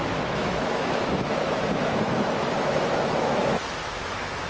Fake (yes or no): yes